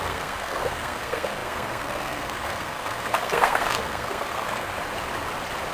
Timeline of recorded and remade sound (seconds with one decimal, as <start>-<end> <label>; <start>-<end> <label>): 0.0-4.7 remade; 4.7-5.7 recorded